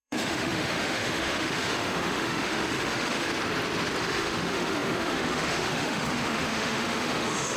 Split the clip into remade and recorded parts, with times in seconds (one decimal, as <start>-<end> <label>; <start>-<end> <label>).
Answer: 0.0-3.3 remade; 3.3-4.0 recorded; 4.0-7.6 remade